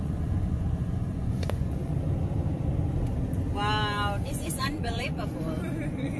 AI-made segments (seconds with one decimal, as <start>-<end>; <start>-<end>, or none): 0.0-1.9; 4.2-6.2

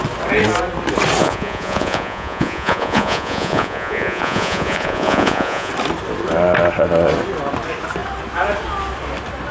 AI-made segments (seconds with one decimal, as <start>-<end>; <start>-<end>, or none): 1.2-5.7

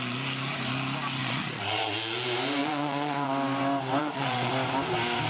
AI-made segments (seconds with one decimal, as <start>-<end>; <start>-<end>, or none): 1.2-1.9; 2.6-3.3; 4.0-4.5

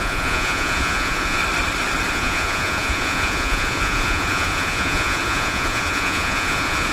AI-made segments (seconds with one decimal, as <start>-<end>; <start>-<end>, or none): 0.0-1.4; 2.1-6.9

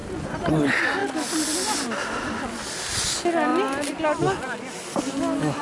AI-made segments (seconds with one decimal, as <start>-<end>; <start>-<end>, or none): none

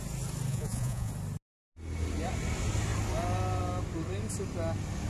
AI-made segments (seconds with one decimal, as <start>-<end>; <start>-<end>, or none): 0.5-1.1